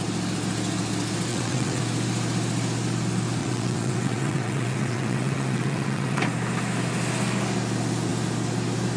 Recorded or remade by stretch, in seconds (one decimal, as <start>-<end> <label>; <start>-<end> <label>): 0.0-1.3 recorded; 1.3-1.8 remade; 1.8-3.4 recorded; 3.4-6.2 remade; 6.2-9.0 recorded